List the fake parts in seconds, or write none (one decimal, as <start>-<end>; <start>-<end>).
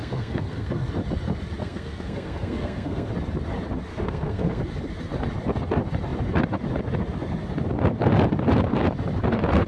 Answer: 0.0-0.9; 1.6-3.1; 3.9-4.6